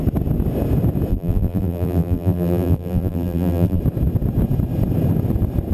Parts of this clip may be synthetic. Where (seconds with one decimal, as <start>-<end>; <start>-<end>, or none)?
1.1-3.8